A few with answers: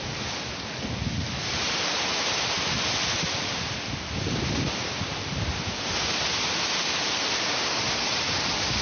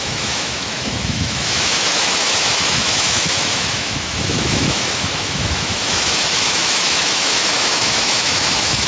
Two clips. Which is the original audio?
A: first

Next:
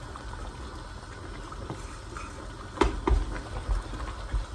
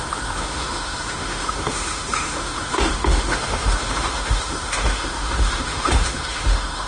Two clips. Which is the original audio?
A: first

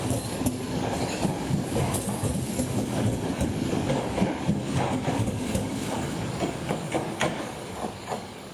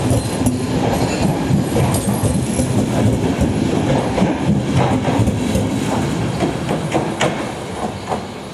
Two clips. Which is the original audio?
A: second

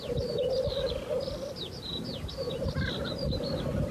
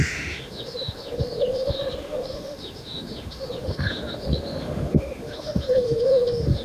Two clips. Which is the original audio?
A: first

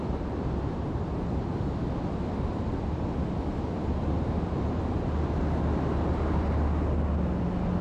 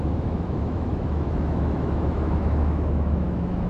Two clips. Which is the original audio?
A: first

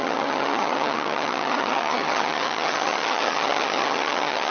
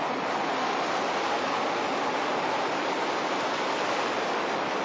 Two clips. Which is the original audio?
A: second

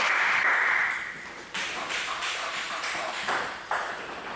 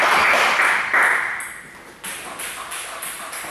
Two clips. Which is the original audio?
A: second